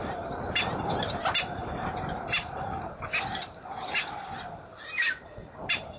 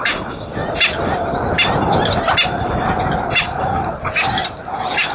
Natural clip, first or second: second